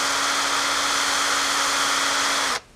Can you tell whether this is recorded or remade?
recorded